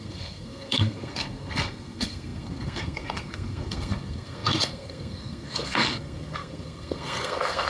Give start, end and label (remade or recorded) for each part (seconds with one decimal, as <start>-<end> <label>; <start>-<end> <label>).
0.0-7.7 remade